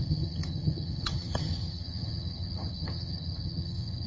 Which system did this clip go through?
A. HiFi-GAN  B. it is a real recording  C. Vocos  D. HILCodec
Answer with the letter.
A